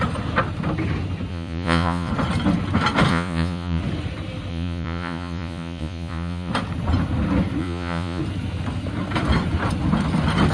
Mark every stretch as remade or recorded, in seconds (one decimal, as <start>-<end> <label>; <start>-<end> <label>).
0.0-1.3 recorded; 1.3-2.1 remade; 2.1-3.1 recorded; 3.1-3.8 remade; 3.8-4.5 recorded; 4.5-6.5 remade; 6.5-7.6 recorded; 7.6-8.2 remade; 8.2-10.5 recorded